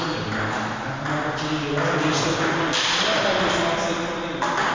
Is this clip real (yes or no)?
yes